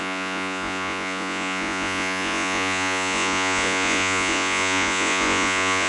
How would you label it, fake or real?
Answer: fake